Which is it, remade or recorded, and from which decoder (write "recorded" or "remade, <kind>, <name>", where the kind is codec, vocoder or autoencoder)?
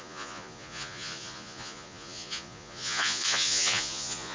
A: remade, vocoder, Vocos